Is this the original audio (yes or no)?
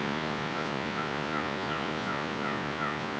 no